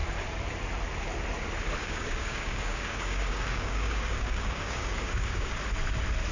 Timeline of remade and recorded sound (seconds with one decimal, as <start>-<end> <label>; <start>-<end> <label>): 0.0-1.8 recorded; 1.8-5.6 remade; 5.6-6.3 recorded